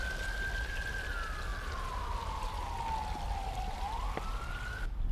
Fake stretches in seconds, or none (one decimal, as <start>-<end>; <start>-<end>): none